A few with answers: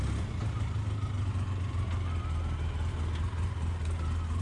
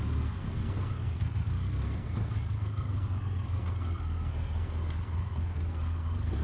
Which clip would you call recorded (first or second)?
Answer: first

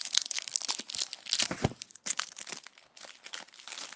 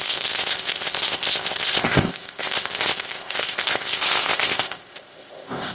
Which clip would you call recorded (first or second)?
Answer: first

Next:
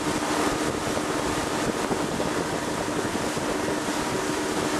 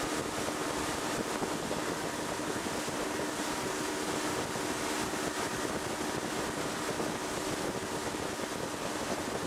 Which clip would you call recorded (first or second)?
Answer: second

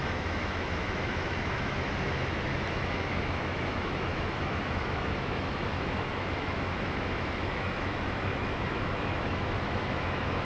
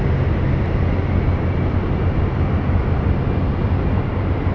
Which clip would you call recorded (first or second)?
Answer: second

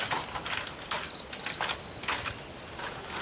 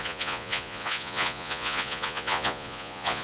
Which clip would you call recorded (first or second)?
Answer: first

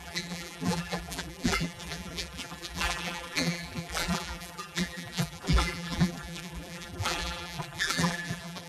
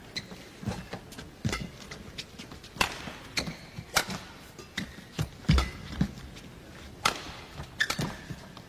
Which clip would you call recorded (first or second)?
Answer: second